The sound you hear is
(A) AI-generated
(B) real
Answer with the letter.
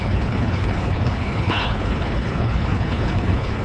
A